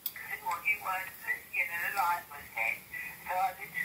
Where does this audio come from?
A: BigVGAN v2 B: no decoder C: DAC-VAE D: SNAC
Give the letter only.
B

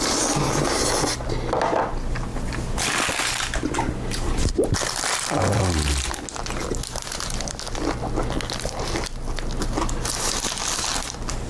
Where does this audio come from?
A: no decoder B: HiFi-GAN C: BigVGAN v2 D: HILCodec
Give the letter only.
A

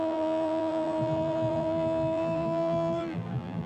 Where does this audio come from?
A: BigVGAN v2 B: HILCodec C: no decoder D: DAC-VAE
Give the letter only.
A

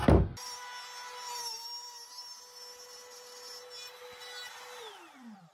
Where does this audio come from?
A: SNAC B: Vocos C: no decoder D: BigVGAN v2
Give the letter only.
C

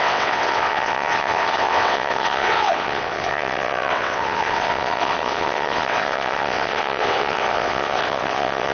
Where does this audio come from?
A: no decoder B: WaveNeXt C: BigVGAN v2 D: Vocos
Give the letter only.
B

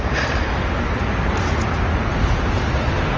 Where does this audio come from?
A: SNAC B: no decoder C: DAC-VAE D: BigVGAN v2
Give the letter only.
D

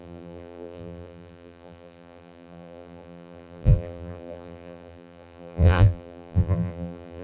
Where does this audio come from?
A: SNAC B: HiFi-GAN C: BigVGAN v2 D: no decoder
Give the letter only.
C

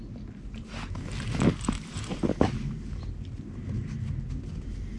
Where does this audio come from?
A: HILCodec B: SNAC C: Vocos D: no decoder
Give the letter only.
D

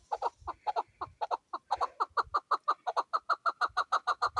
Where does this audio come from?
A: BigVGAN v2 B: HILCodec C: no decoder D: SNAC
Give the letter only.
C